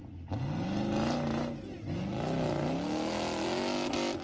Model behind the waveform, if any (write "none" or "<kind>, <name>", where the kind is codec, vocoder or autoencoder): none